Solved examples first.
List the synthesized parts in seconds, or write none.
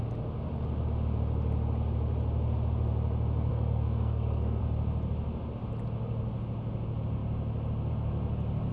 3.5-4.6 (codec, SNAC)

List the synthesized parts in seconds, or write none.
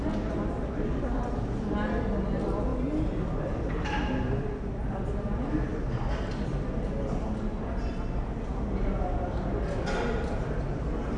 none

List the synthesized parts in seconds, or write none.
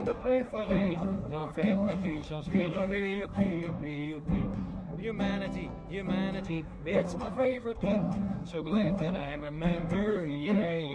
0.0-5.0 (codec, SNAC); 6.4-10.9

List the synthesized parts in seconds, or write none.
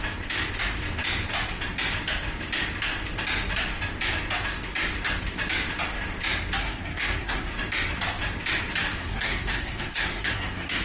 6.6-7.5 (codec, SNAC); 9.0-10.8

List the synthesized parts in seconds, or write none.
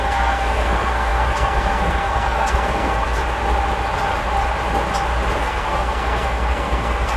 0.0-3.2 (codec, SNAC); 5.4-7.2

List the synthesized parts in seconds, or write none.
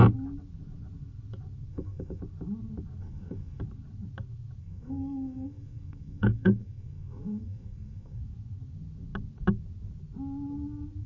1.7-2.2 (codec, SNAC); 3.0-3.6; 4.6-8.2